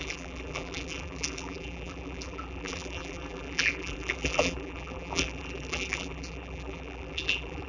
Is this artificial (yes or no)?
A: yes